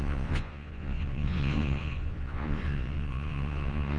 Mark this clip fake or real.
fake